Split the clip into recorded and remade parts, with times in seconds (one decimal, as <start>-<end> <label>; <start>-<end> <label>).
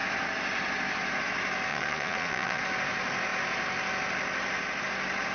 0.0-1.7 recorded; 1.7-2.6 remade; 2.6-5.3 recorded